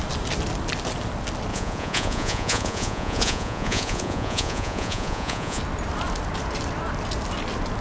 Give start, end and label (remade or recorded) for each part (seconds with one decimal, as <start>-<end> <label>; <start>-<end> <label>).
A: 0.0-1.5 recorded; 1.5-5.6 remade; 5.6-7.8 recorded